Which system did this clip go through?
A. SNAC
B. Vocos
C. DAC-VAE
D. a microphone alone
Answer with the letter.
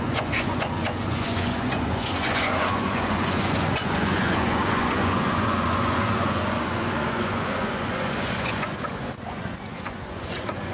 B